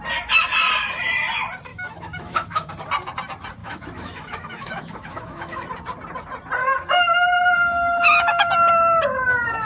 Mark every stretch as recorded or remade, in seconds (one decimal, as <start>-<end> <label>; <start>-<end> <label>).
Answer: 0.0-1.7 recorded; 1.7-2.7 remade; 2.7-3.6 recorded; 3.6-5.7 remade; 5.7-6.6 recorded; 6.6-8.5 remade; 8.5-9.6 recorded

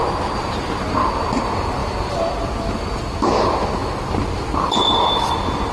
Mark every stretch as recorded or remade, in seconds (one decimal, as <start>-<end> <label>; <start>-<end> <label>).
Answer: 0.0-5.7 recorded

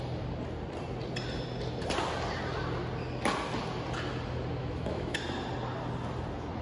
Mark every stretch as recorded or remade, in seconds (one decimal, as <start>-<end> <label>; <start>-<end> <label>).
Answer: 0.0-4.6 recorded; 4.6-5.2 remade; 5.2-6.6 recorded